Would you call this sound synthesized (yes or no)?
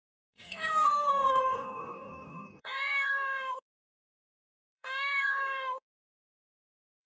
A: yes